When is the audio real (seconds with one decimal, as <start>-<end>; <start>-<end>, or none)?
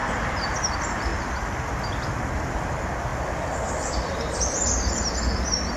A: 0.0-1.1; 1.7-5.8